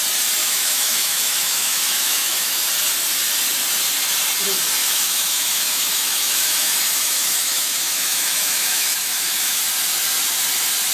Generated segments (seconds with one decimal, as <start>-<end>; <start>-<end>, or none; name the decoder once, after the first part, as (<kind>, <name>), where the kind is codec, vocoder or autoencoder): 0.4-2.7 (autoencoder, DAC-VAE); 4.8-9.6